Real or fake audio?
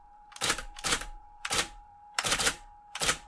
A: fake